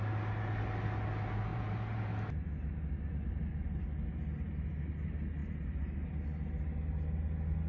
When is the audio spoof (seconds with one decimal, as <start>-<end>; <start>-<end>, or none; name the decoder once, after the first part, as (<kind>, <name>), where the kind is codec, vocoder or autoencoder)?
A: 1.5-2.1 (vocoder, BigVGAN v2); 5.4-6.1